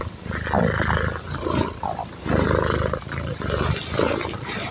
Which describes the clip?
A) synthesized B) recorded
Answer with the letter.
B